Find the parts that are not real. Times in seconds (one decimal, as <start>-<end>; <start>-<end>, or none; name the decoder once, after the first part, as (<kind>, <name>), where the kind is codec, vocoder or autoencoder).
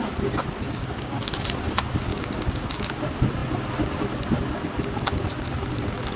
0.8-1.3 (codec, DAC); 2.1-2.9